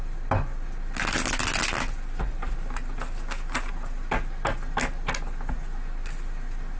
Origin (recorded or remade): recorded